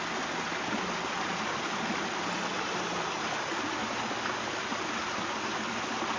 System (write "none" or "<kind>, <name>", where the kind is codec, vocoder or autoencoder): none